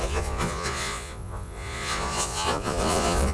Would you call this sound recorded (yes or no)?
no